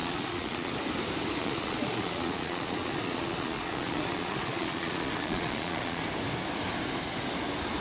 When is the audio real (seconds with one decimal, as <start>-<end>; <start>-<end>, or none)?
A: 0.7-1.4; 6.0-7.8